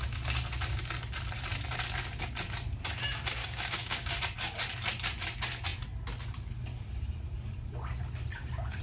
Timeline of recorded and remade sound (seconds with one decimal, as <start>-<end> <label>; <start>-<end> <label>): 0.0-3.4 recorded; 3.4-4.2 remade; 4.2-8.8 recorded

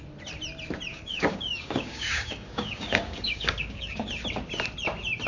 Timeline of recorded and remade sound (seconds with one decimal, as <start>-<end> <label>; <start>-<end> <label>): 0.0-0.9 recorded; 0.9-4.1 remade; 4.1-5.3 recorded

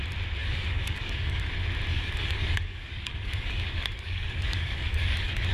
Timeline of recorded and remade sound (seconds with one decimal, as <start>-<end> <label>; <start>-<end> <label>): 0.0-0.4 recorded; 0.4-1.5 remade; 1.5-1.9 recorded; 1.9-5.5 remade